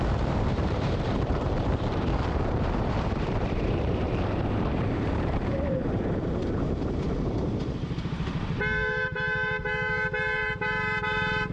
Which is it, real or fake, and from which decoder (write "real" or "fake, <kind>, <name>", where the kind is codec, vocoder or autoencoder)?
fake, vocoder, BigVGAN v2